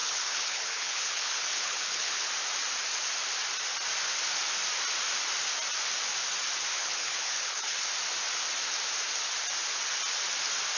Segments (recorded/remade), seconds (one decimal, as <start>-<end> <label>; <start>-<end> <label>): 0.0-2.3 remade; 2.3-6.7 recorded; 6.7-7.9 remade; 7.9-10.8 recorded